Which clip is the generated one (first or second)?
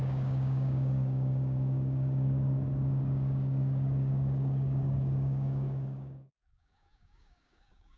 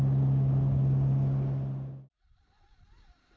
first